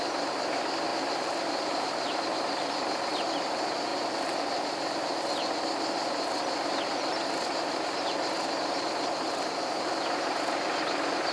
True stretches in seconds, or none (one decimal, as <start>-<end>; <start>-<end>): 0.0-0.9; 1.8-11.3